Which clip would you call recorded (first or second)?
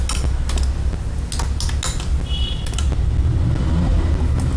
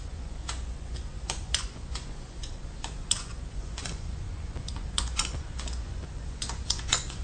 first